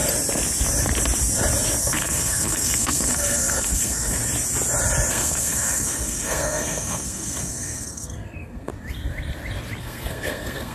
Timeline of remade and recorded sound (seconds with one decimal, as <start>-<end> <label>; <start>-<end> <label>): 0.0-1.8 recorded; 1.8-4.2 remade; 4.2-5.1 recorded; 5.1-8.7 remade; 8.7-9.8 recorded; 9.8-10.7 remade